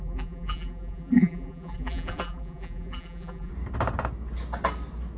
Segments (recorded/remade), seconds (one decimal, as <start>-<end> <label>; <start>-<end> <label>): 0.0-3.5 remade; 3.5-5.2 recorded